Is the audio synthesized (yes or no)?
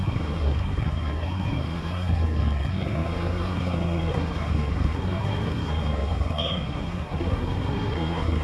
yes